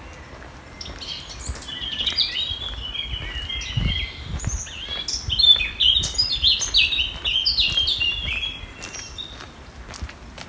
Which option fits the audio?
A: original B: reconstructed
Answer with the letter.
A